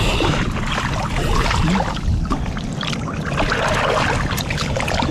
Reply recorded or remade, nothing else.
recorded